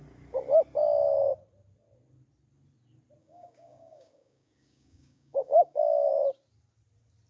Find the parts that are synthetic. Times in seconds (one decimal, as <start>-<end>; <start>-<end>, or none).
3.2-6.1